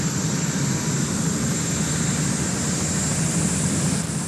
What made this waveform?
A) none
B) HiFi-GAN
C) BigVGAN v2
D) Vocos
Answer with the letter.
A